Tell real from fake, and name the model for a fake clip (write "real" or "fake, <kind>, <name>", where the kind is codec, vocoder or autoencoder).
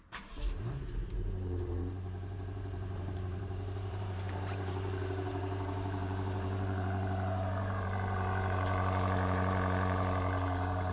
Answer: fake, vocoder, BigVGAN v2